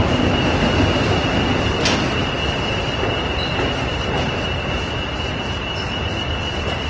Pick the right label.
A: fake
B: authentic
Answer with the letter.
B